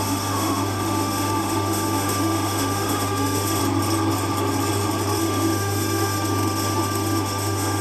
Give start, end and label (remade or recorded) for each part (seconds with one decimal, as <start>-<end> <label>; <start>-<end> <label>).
0.0-3.6 remade; 3.6-5.2 recorded; 5.2-7.8 remade